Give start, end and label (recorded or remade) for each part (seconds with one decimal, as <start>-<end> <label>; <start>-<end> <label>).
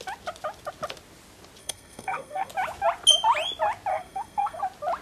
0.0-1.6 recorded; 1.6-2.5 remade; 2.5-3.9 recorded; 3.9-4.6 remade; 4.6-5.0 recorded